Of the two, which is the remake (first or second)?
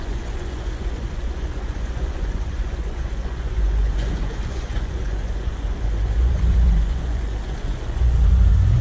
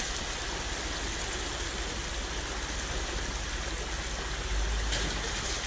first